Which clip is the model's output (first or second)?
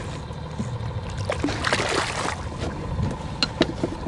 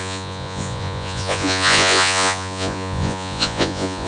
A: second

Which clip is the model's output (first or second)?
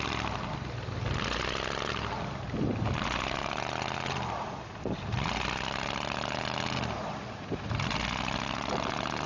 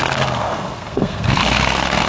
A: second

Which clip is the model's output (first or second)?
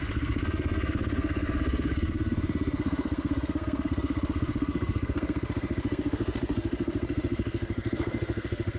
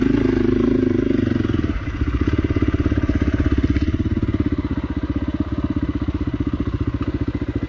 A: first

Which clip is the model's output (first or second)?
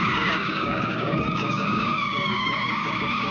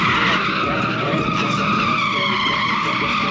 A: first